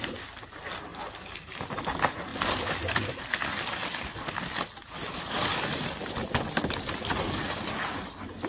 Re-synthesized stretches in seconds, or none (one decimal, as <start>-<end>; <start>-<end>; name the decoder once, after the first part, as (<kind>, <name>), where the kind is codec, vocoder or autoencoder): none